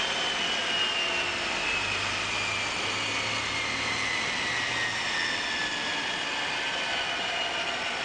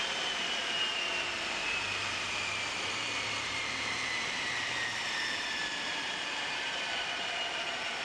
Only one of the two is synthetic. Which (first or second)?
second